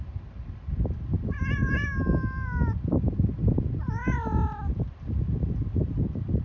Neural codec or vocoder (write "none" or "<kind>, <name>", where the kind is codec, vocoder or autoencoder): none